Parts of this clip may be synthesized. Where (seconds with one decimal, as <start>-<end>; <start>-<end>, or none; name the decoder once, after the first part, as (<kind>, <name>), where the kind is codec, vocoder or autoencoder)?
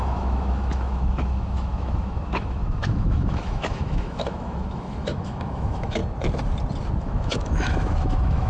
0.0-6.0 (autoencoder, DAC-VAE); 7.0-8.5